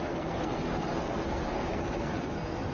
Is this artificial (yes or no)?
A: yes